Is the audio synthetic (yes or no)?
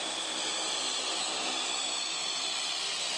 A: no